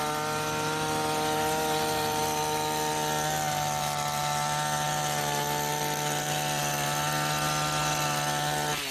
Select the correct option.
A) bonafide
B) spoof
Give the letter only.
A